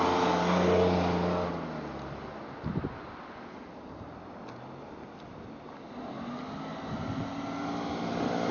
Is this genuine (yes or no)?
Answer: yes